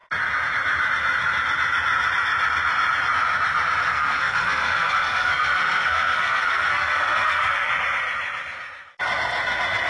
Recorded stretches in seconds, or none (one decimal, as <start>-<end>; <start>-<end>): 0.0-3.9; 7.7-9.9